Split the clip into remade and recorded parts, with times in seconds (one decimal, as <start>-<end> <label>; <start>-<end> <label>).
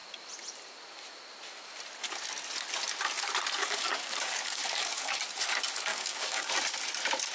0.0-3.6 recorded; 3.6-5.2 remade; 5.2-5.9 recorded; 5.9-6.5 remade; 6.5-7.3 recorded